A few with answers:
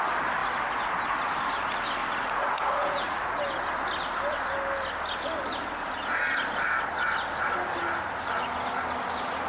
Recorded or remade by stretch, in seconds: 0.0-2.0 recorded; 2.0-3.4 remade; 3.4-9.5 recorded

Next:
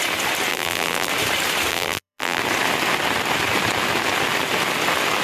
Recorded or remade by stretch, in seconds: 0.0-0.5 recorded; 0.5-1.1 remade; 1.1-1.7 recorded; 1.7-2.4 remade; 2.4-5.2 recorded

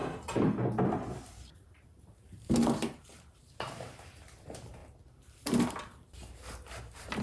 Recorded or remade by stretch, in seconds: 0.0-1.1 recorded; 1.1-4.8 remade; 4.8-5.7 recorded; 5.7-7.2 remade